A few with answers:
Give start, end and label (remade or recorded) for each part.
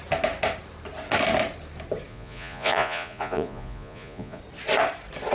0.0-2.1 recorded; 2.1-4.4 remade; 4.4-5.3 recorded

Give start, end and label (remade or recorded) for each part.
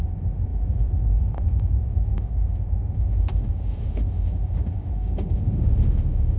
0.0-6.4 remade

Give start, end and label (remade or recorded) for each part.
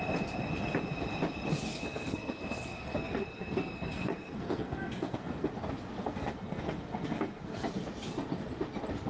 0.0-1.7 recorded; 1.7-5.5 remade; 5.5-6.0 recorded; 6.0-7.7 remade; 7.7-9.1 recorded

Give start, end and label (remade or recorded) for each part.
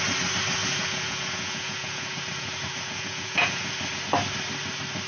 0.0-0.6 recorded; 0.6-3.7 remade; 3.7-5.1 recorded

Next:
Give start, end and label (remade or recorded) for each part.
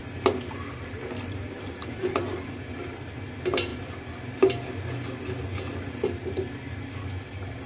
0.0-1.8 recorded; 1.8-2.5 remade; 2.5-7.7 recorded